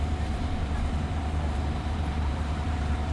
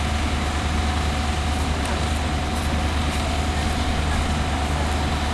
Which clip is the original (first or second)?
second